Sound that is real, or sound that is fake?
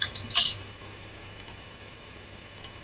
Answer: fake